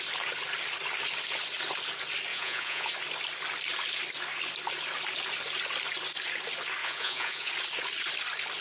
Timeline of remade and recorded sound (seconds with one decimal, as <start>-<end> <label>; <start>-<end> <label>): 0.0-2.3 recorded; 2.3-2.9 remade; 2.9-6.8 recorded; 6.8-7.5 remade; 7.5-8.6 recorded